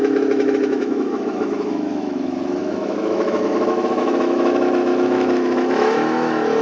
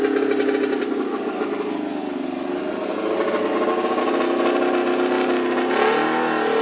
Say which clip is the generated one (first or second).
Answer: first